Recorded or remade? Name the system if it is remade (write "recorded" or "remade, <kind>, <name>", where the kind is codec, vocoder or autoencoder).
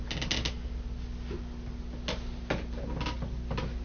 recorded